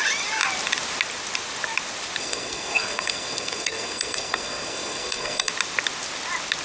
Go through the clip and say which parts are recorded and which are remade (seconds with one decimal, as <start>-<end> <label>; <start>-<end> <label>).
0.0-2.2 recorded; 2.2-5.5 remade; 5.5-6.6 recorded